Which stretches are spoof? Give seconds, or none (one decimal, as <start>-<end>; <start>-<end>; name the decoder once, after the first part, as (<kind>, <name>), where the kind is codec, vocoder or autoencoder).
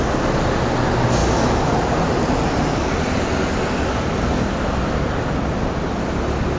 none